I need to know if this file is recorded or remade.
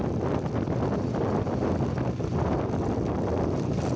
recorded